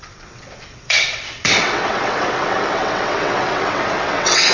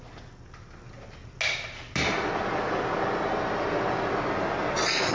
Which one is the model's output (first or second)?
first